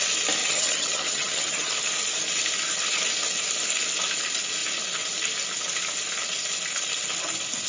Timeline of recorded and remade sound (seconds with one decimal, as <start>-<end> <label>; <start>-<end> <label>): 0.0-0.4 recorded; 0.4-1.7 remade; 1.7-7.7 recorded